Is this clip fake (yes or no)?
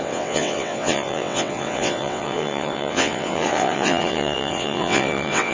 yes